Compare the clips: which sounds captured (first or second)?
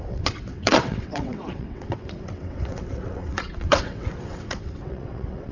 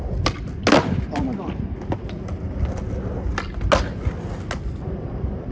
second